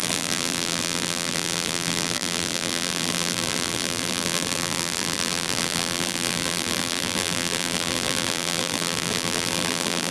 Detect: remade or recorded remade